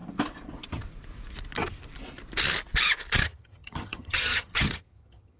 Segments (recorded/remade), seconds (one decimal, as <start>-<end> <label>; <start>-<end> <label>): 0.0-3.2 recorded; 3.2-5.4 remade